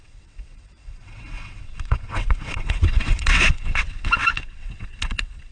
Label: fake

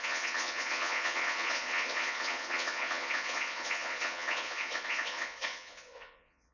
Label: fake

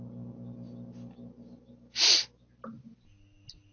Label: real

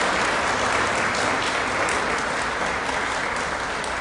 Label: real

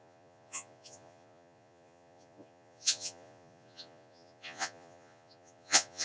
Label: fake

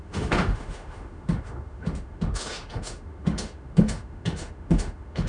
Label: fake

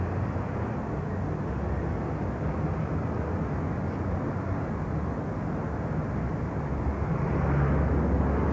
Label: real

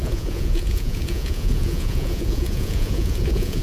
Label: fake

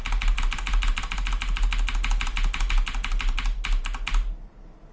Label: real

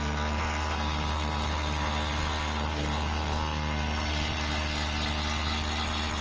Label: real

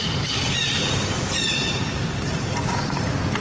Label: real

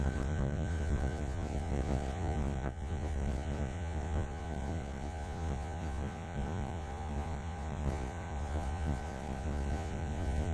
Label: fake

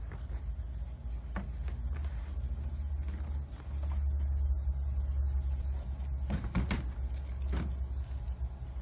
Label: real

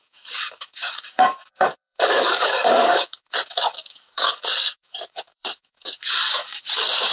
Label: fake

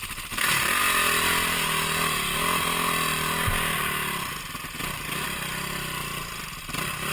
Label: real